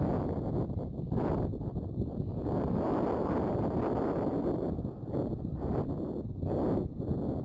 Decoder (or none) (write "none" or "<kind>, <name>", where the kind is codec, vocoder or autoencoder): none